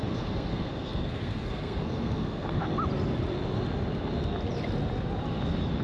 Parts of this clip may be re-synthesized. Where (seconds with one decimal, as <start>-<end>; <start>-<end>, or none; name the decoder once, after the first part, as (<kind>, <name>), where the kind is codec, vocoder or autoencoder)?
0.0-2.7 (codec, SNAC)